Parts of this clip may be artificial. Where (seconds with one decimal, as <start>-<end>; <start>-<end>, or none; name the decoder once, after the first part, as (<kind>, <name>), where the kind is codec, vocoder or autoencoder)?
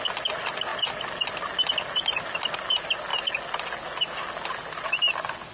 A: none